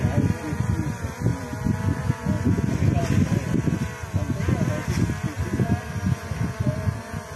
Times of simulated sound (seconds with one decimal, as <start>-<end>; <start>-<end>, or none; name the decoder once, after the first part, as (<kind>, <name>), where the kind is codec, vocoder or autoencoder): none